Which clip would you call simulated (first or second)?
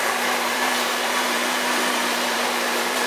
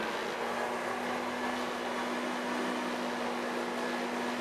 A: first